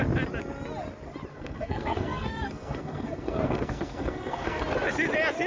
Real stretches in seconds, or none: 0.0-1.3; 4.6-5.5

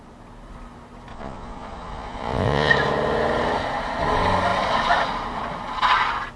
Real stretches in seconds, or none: 0.0-1.1; 2.7-6.4

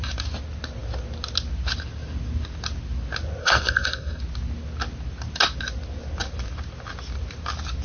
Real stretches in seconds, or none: 0.0-3.4; 4.2-7.8

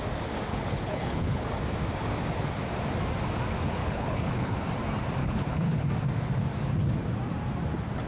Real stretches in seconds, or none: 0.0-0.5; 1.4-3.8; 4.6-5.2; 5.9-8.1

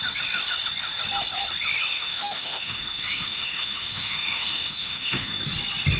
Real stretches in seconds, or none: 0.0-1.9; 5.4-6.0

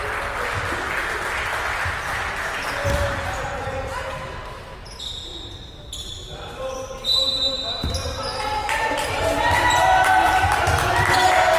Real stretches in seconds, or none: 0.0-2.8; 3.4-5.3; 10.2-11.6

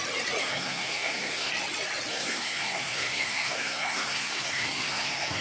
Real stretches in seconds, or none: 0.0-0.4; 1.5-2.1

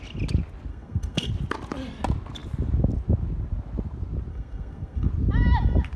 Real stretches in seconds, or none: 0.0-0.7; 1.3-4.3; 5.1-6.0